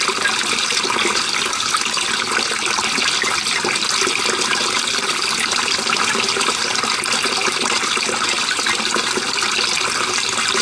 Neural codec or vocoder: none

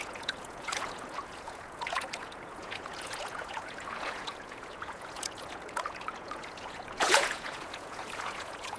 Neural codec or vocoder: vocoder, Vocos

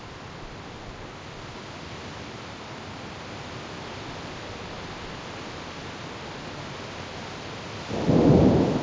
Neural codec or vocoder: none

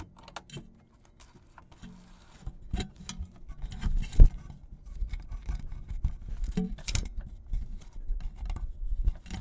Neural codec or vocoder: none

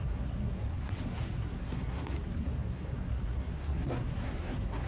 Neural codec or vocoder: codec, SNAC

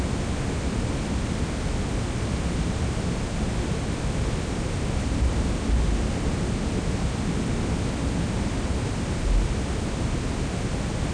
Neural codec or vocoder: none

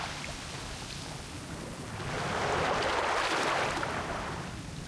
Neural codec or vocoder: none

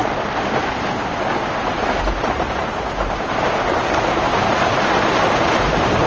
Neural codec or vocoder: vocoder, BigVGAN v2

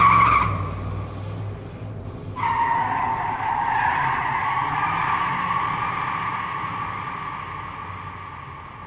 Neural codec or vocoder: none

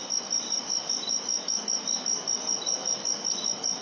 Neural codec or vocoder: none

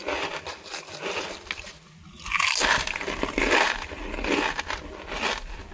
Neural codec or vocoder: none